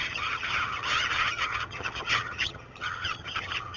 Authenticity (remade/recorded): remade